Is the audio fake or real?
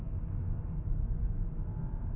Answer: real